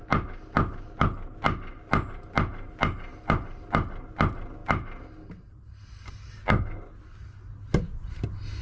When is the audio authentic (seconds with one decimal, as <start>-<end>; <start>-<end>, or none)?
0.0-8.6